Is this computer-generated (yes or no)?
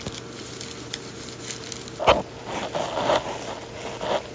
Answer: no